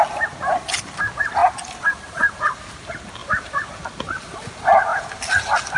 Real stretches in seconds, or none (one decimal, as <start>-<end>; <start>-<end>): 0.0-4.9